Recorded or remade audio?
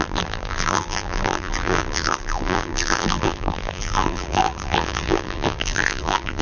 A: remade